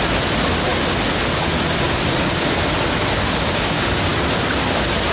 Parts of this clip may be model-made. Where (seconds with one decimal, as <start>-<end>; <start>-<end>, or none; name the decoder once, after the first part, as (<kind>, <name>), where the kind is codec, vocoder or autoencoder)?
none